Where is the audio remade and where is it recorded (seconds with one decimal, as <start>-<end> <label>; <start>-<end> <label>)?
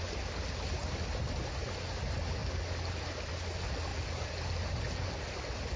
0.0-5.8 recorded